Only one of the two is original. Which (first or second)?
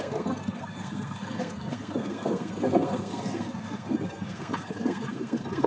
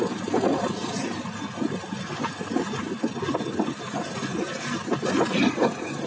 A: second